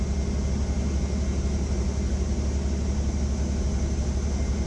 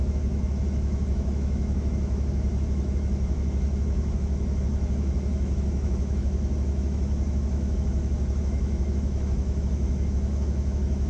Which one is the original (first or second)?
first